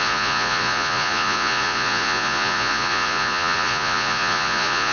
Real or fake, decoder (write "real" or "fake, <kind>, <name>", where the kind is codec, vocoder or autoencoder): fake, vocoder, Vocos